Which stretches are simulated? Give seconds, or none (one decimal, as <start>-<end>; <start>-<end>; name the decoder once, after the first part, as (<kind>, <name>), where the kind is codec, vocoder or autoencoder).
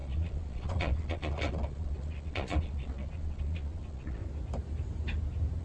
0.0-4.2 (vocoder, Vocos)